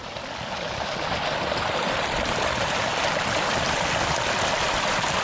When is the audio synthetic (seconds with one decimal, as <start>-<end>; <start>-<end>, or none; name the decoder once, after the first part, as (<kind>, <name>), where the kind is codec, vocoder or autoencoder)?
none